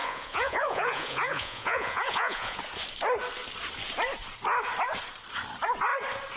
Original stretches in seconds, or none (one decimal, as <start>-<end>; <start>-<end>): 2.6-6.4